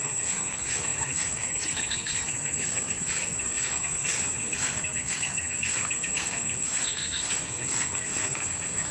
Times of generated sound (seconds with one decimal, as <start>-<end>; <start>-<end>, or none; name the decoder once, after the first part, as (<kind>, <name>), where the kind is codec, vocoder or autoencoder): 0.0-8.9 (codec, SNAC)